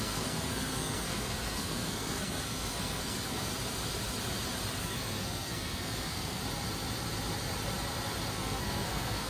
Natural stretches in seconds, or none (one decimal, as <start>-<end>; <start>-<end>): 3.5-4.8; 6.4-8.3